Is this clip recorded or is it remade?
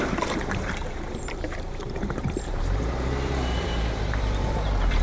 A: remade